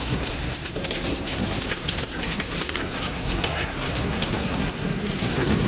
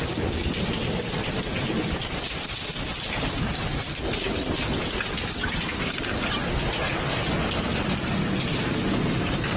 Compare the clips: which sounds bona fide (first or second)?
second